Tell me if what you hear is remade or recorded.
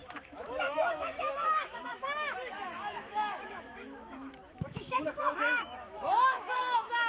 remade